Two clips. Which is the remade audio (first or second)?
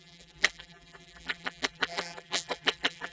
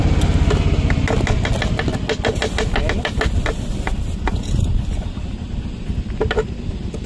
first